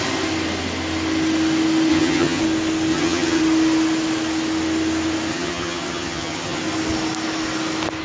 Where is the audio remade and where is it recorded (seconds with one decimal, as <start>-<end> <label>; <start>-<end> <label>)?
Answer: 0.0-1.9 recorded; 1.9-2.4 remade; 2.4-2.9 recorded; 2.9-3.4 remade; 3.4-5.3 recorded; 5.3-6.6 remade; 6.6-8.0 recorded